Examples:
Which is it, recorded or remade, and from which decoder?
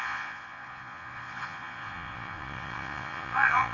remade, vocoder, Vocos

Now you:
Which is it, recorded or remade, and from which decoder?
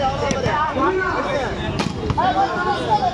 recorded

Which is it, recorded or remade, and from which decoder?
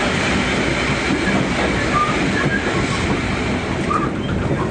recorded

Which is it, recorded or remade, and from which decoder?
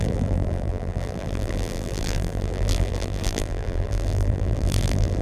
remade, vocoder, BigVGAN v2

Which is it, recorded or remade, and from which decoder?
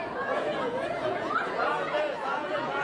remade, vocoder, Vocos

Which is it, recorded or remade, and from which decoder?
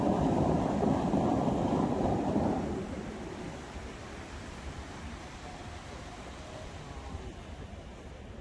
remade, vocoder, BigVGAN v2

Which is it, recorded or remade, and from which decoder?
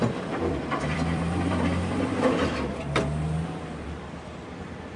remade, vocoder, BigVGAN v2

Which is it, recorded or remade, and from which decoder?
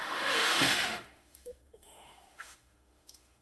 remade, autoencoder, DAC-VAE